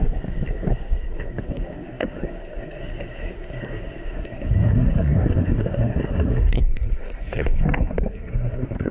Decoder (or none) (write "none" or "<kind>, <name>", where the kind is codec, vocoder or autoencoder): codec, SNAC